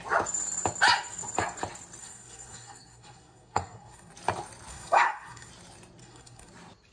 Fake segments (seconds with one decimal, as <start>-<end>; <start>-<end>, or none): 2.0-4.1; 4.7-5.5; 6.0-6.5